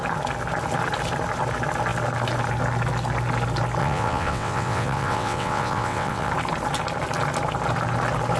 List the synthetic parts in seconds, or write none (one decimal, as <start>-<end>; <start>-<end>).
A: 3.8-6.3